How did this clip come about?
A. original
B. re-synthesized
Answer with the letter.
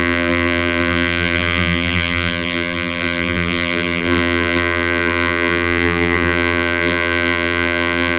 B